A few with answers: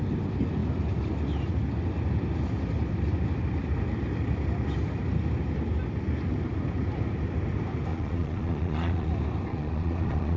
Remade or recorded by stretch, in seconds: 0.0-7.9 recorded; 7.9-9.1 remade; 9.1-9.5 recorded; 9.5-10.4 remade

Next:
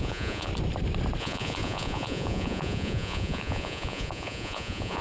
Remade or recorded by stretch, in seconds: 0.0-0.5 remade; 0.5-1.2 recorded; 1.2-5.0 remade

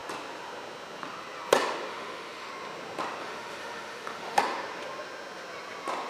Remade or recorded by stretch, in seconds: 0.0-1.9 recorded; 1.9-2.5 remade; 2.5-3.2 recorded; 3.2-4.4 remade; 4.4-6.1 recorded